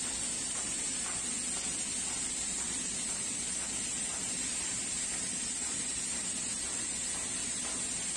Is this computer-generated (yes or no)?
no